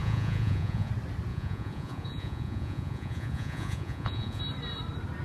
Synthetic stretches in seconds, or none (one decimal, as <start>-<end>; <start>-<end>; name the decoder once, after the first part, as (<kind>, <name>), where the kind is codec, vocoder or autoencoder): 0.0-0.9 (vocoder, Vocos); 1.3-4.4